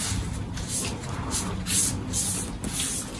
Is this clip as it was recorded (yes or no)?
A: yes